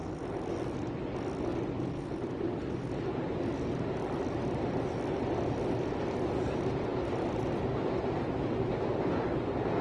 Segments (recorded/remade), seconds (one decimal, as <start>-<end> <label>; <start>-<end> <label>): 0.0-9.8 recorded